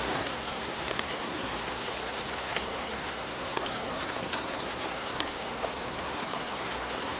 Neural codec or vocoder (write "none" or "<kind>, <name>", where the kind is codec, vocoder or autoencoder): codec, SNAC